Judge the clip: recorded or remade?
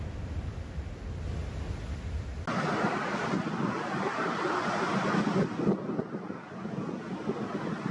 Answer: recorded